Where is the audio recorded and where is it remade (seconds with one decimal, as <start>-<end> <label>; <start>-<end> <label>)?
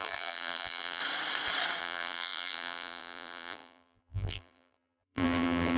0.0-1.0 remade; 1.0-1.8 recorded; 1.8-5.8 remade